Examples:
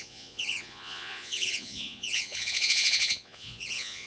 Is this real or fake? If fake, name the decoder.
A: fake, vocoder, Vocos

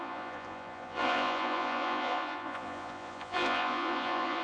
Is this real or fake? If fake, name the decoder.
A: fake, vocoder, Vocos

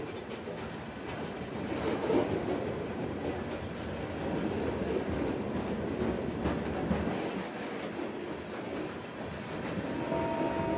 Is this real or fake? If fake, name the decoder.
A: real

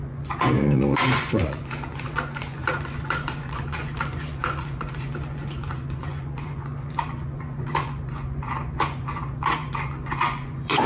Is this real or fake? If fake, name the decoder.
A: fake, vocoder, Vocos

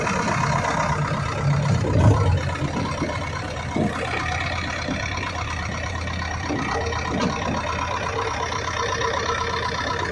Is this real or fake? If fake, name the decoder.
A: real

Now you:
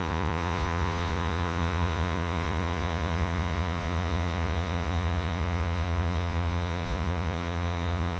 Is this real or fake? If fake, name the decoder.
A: fake, vocoder, Vocos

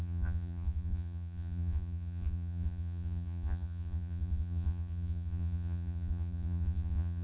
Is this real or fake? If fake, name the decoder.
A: fake, vocoder, Vocos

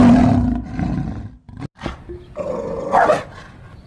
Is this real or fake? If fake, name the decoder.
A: real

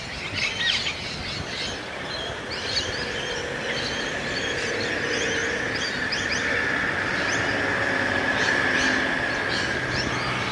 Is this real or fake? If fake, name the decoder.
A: real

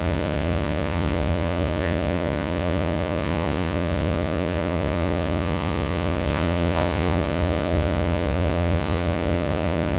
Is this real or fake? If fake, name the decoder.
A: fake, vocoder, Vocos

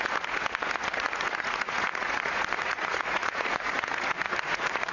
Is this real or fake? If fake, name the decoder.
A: fake, vocoder, Vocos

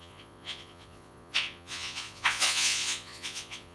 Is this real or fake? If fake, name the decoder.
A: fake, vocoder, Vocos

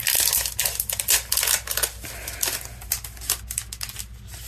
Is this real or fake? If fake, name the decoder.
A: real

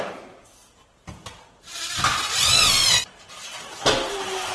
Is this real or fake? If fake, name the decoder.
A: real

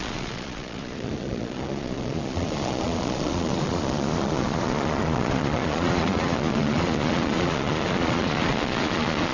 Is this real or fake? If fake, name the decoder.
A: fake, vocoder, Vocos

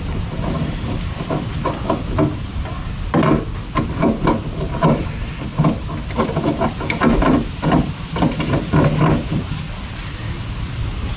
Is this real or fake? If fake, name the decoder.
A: real